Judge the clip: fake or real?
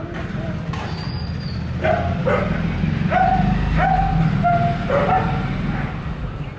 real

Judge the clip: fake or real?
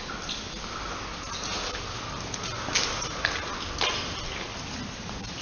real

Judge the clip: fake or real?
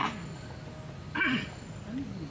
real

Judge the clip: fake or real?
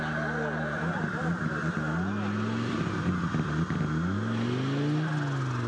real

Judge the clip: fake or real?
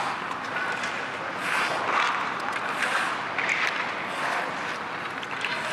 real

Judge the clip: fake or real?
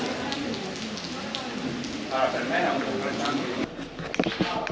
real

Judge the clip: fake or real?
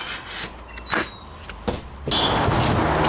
real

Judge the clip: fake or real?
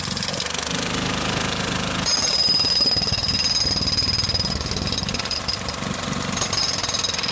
real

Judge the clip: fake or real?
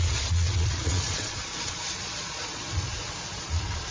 fake